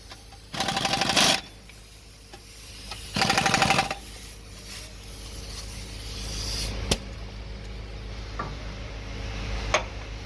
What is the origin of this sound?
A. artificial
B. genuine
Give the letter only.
B